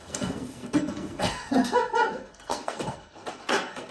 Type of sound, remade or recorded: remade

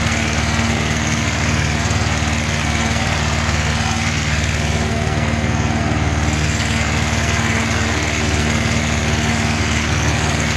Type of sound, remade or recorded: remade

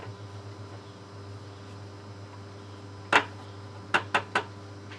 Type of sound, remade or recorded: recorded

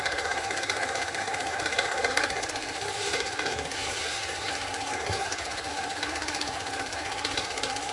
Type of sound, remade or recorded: remade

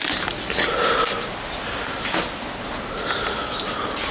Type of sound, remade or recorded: recorded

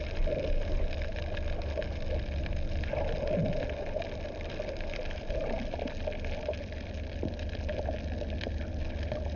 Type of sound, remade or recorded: recorded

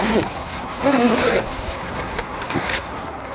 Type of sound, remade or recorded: remade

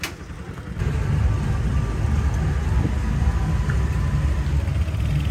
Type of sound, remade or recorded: recorded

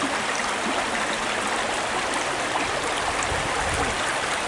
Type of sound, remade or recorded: recorded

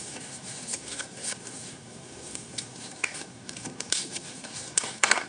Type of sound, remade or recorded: remade